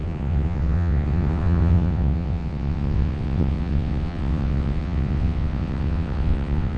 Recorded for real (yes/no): no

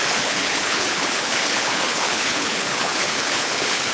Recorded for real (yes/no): no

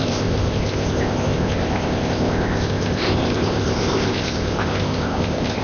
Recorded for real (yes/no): no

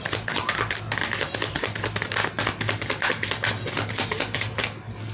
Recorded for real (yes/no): yes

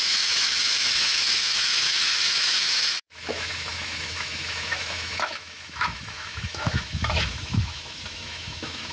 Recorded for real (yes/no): no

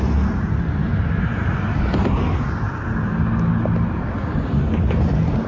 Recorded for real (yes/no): yes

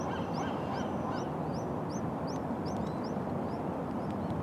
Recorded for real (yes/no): yes